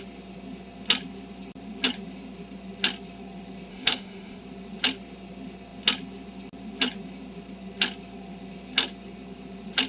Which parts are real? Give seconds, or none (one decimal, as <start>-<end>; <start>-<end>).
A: 0.0-3.7; 4.4-9.9